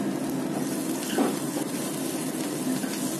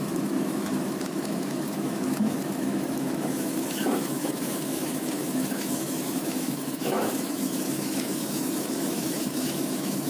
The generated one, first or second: second